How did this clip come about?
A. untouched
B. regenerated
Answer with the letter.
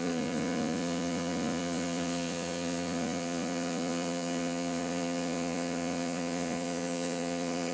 B